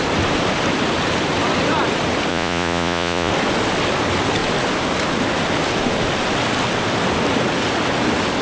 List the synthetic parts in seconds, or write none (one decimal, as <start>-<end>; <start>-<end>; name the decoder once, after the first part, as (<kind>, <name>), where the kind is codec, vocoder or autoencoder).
2.3-3.3 (vocoder, Vocos)